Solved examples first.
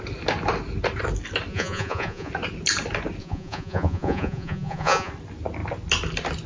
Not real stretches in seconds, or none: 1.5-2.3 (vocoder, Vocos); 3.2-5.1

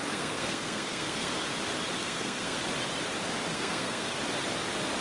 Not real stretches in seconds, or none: 0.0-1.3 (codec, SNAC); 2.0-2.6; 3.5-4.2

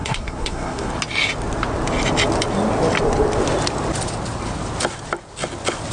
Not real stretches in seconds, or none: 0.0-0.9 (codec, SNAC)

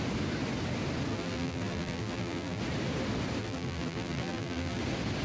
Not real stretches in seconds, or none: 1.1-2.6 (vocoder, BigVGAN v2); 3.4-4.8

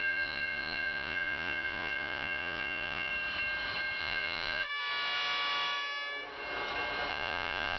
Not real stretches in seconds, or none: 0.0-3.1 (vocoder, Vocos); 4.0-4.7; 7.1-7.8